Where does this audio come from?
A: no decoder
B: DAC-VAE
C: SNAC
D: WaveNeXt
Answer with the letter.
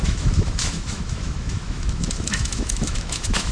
B